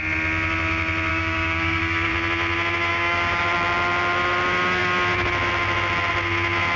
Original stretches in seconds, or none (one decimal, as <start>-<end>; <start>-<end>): 0.0-1.1; 2.1-2.9; 3.4-6.8